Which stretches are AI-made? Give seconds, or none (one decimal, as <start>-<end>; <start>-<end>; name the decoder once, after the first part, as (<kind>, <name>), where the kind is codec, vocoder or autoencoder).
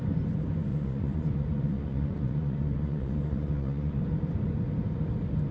0.7-4.0 (vocoder, Vocos)